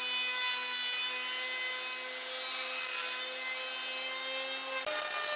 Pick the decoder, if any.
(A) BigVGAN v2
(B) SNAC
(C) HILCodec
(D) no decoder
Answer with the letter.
D